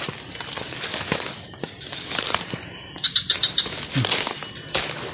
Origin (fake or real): real